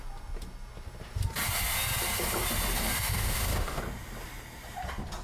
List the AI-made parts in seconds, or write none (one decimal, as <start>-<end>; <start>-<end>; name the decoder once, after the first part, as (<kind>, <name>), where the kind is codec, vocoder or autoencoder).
3.1-3.8 (autoencoder, DAC-VAE)